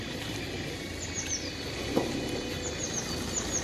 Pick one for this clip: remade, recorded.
recorded